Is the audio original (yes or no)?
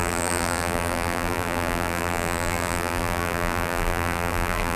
no